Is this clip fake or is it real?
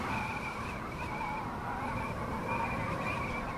real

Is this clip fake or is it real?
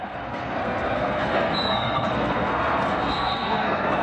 fake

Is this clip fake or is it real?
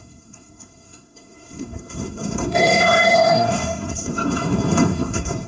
fake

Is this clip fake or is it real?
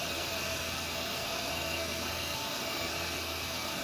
fake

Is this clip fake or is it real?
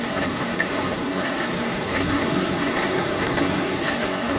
fake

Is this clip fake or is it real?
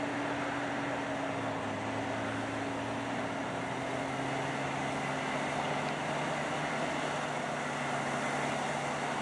real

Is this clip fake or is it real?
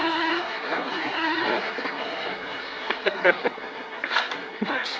fake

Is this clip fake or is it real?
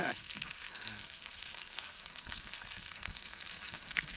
fake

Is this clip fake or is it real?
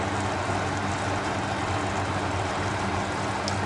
real